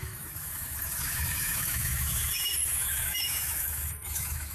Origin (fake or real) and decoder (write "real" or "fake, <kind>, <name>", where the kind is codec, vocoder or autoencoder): fake, autoencoder, DAC-VAE